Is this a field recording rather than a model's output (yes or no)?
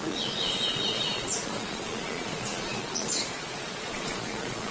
no